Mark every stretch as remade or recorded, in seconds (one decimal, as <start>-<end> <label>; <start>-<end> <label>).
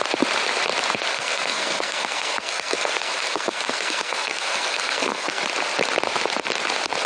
0.0-1.1 recorded; 1.1-5.4 remade; 5.4-7.1 recorded